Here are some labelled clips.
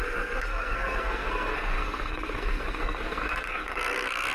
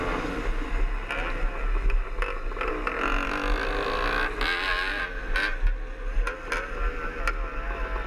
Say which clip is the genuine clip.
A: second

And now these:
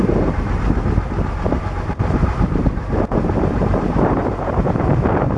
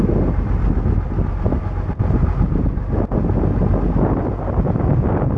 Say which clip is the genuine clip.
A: second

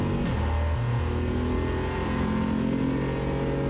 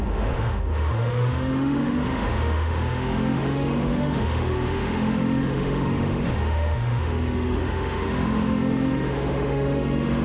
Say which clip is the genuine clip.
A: first